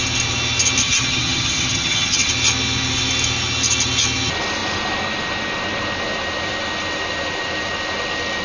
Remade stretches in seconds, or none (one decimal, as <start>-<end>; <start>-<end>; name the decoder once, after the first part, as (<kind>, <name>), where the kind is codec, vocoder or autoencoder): 0.8-2.3 (vocoder, HiFi-GAN)